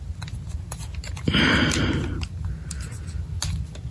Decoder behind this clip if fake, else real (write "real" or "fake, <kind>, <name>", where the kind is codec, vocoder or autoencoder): real